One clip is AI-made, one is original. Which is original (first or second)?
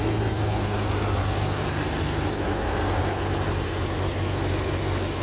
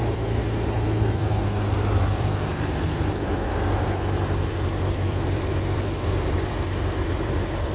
first